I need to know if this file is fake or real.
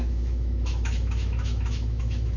fake